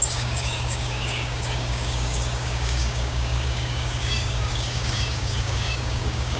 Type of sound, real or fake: fake